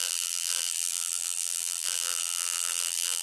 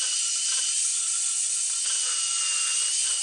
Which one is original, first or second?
second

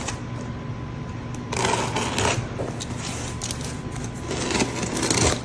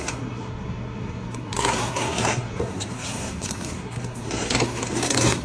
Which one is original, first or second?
first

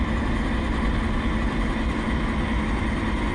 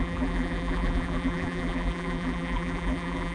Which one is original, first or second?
first